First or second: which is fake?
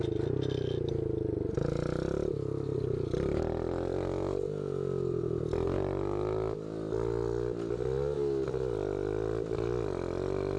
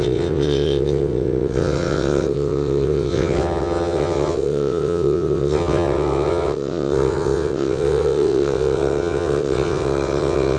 second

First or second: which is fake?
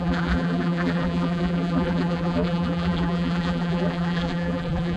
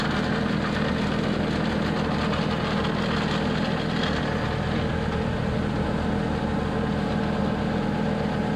first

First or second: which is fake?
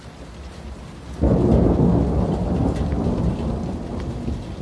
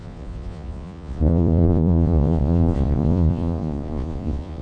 second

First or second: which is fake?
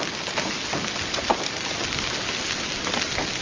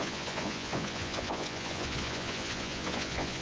second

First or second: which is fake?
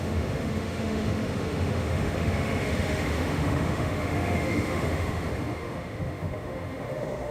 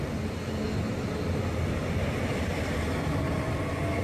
first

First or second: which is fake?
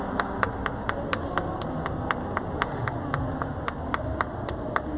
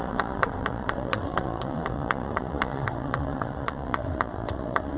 second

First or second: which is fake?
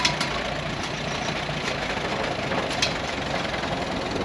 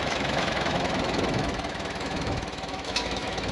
second